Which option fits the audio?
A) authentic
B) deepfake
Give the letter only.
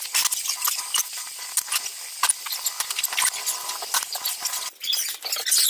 A